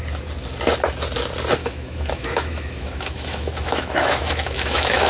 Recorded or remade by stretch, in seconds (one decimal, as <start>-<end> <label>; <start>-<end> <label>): 0.0-1.6 recorded; 1.6-5.1 remade

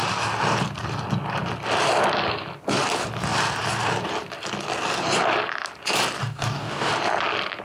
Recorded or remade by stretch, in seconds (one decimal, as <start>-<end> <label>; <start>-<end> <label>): 0.0-6.2 recorded; 6.2-6.9 remade; 6.9-7.6 recorded

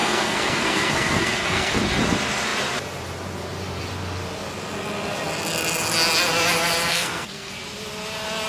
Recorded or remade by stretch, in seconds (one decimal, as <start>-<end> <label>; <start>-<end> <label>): 0.0-1.8 remade; 1.8-6.9 recorded; 6.9-7.5 remade; 7.5-8.5 recorded